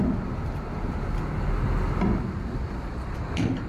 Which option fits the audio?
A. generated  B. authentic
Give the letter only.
B